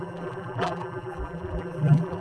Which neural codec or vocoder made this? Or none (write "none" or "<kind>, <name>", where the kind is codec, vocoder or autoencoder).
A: vocoder, BigVGAN v2